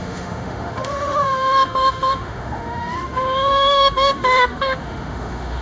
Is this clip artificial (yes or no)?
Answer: yes